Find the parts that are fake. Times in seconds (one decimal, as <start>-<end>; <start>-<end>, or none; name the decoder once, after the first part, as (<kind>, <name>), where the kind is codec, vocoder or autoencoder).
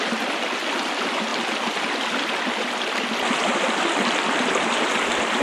none